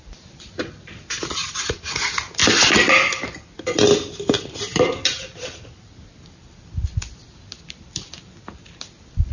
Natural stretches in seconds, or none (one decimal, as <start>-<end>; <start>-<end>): 2.4-7.6